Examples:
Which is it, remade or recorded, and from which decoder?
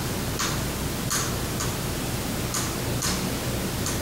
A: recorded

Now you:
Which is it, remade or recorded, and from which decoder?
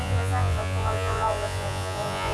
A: remade, vocoder, Vocos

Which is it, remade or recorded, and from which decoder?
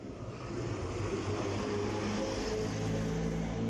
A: recorded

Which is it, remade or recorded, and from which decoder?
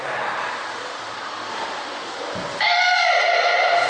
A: remade, vocoder, BigVGAN v2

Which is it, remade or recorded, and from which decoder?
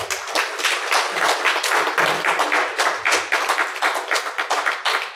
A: recorded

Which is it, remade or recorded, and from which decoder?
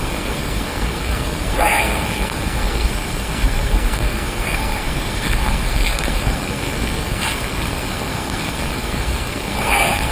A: remade, codec, SNAC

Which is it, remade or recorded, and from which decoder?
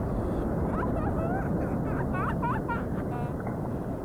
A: recorded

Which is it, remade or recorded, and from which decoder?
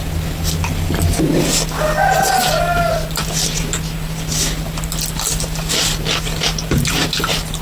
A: recorded